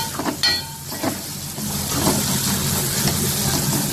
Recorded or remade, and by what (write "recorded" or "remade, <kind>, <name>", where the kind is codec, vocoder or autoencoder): recorded